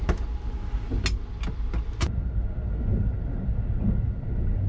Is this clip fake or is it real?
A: real